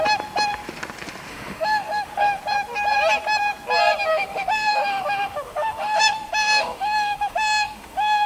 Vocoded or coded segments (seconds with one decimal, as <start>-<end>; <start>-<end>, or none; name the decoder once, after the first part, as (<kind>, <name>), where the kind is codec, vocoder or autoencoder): 1.3-2.4 (autoencoder, DAC-VAE); 4.1-8.3